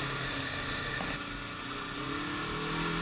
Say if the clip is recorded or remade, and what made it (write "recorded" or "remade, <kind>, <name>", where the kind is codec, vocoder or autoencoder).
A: recorded